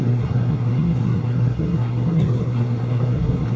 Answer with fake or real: fake